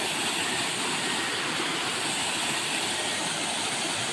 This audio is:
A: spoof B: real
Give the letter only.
A